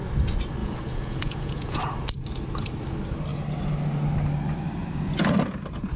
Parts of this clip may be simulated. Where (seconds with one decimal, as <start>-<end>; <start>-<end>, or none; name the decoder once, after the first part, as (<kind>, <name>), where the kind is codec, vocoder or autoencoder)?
0.6-1.8 (vocoder, Vocos)